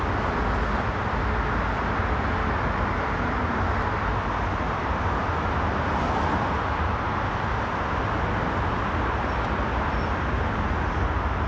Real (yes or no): yes